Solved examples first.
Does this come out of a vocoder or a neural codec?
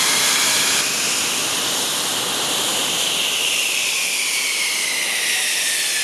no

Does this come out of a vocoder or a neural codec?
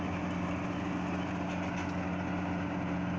no